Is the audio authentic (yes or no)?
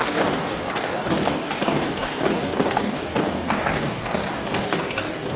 no